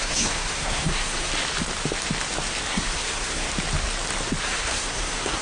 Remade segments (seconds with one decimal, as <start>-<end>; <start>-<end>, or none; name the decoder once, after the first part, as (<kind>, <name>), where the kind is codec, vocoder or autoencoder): 0.0-1.3 (codec, SNAC); 2.7-3.5; 4.4-5.4